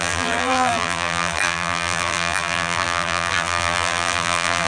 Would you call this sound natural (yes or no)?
no